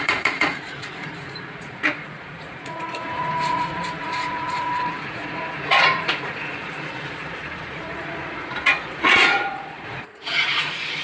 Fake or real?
fake